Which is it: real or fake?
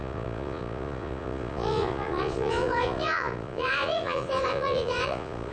fake